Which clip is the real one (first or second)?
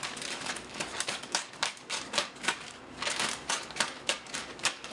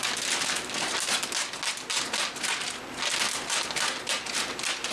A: second